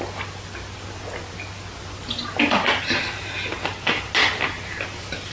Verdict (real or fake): real